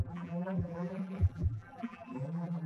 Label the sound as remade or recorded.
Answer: remade